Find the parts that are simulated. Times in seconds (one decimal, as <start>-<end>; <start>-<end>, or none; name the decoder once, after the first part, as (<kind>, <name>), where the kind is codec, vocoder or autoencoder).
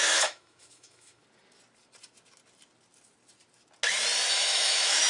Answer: 0.0-1.2 (autoencoder, DAC-VAE); 4.3-5.1